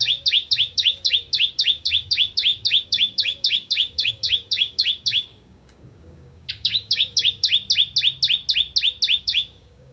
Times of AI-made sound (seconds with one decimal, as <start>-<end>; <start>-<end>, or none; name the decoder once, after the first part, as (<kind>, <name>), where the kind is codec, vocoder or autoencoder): 0.0-7.5 (codec, DAC); 9.2-9.9